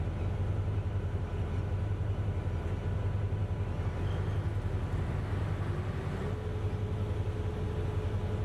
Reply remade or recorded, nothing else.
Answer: recorded